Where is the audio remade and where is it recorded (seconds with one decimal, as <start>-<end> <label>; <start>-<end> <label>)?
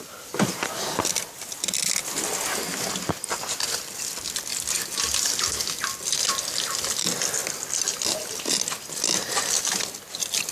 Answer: 0.0-10.5 recorded